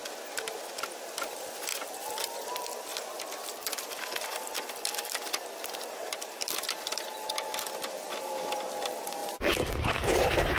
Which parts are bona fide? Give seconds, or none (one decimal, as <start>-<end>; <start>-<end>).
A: 0.0-0.7; 1.7-2.2; 2.9-3.6; 9.2-9.9